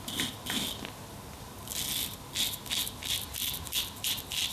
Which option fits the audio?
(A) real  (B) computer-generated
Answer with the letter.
A